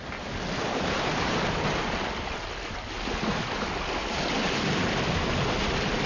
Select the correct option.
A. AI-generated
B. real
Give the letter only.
B